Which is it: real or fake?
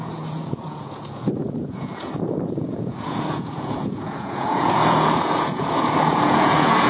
fake